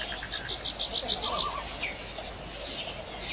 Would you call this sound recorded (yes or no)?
yes